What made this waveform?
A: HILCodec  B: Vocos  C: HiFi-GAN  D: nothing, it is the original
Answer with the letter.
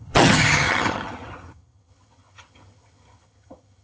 C